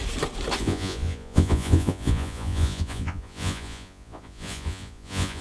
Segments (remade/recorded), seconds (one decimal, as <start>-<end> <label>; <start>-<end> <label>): 0.0-0.6 recorded; 0.6-5.4 remade